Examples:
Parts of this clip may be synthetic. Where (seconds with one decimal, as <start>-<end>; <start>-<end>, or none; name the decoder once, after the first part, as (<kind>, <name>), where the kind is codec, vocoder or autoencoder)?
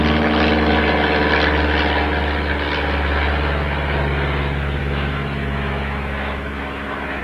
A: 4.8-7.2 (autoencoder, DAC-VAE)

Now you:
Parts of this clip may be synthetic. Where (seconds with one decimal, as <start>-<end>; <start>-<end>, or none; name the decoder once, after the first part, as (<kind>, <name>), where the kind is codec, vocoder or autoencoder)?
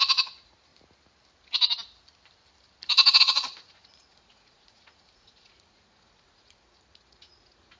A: 0.0-0.7 (vocoder, Vocos); 3.2-7.8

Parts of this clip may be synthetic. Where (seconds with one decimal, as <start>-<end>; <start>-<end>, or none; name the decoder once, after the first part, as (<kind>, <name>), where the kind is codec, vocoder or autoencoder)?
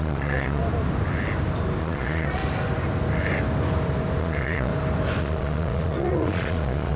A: 0.0-0.6 (vocoder, Vocos); 1.8-2.4; 4.2-4.7; 5.2-7.0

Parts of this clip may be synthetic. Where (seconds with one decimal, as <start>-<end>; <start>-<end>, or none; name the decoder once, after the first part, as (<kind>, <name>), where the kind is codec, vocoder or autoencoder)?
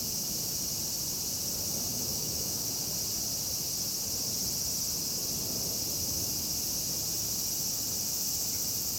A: 1.9-2.7 (autoencoder, DAC-VAE)